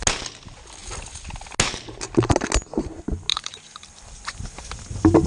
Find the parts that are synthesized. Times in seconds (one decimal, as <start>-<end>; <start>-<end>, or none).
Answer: 3.3-5.3